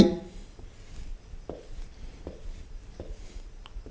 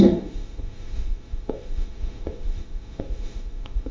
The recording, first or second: first